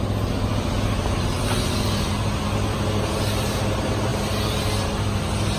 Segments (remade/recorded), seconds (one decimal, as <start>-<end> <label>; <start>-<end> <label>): 0.0-5.6 recorded